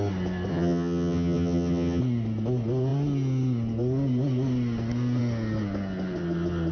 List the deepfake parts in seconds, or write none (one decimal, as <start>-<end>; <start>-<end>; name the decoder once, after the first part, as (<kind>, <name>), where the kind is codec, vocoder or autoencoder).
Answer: 0.5-2.0 (vocoder, HiFi-GAN)